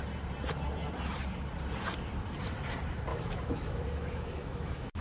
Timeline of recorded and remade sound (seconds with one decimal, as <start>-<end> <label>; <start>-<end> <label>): 0.0-3.1 recorded; 3.1-5.0 remade